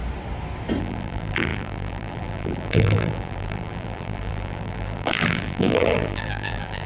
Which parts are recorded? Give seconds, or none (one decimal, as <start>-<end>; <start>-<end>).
0.0-0.8